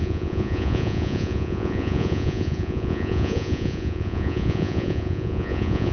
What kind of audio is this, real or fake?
fake